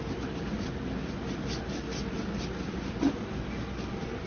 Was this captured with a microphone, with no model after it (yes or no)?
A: yes